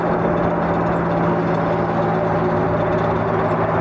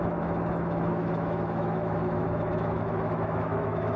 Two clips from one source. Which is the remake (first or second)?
second